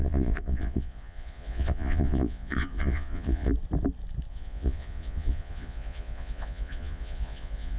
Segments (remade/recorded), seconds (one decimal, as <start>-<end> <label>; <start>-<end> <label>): 0.0-3.5 remade; 3.5-4.3 recorded; 4.3-7.8 remade